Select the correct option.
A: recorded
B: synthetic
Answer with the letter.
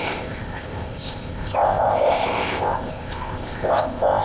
B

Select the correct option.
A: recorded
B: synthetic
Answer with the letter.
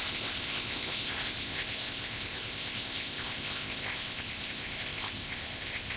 B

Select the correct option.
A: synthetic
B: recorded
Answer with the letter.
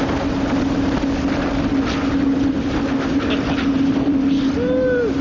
B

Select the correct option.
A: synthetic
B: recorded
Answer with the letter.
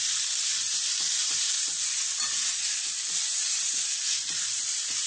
B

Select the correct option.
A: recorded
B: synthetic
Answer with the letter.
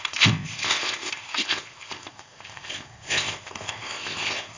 B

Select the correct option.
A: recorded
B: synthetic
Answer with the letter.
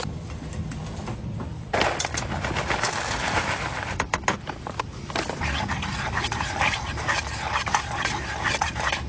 A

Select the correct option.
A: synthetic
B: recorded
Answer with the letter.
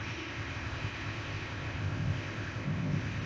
A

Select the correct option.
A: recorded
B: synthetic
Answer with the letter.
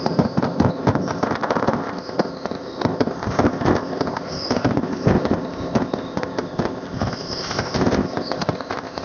B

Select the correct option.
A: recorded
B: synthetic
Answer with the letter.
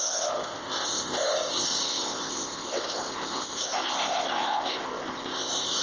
B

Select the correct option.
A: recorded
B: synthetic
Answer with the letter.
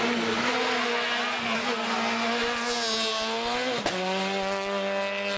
A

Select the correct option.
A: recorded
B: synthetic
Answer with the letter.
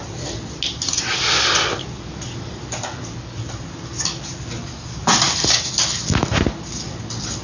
A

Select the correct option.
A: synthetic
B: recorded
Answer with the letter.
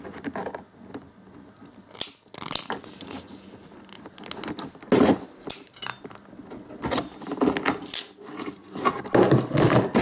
B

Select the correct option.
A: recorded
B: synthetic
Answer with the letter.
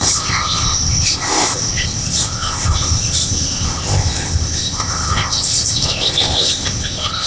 B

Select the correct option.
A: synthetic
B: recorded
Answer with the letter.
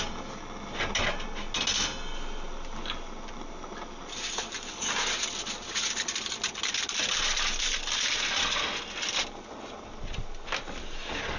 B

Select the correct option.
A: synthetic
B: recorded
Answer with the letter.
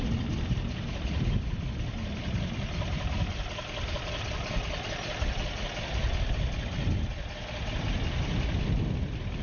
B